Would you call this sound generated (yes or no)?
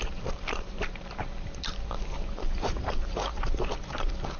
yes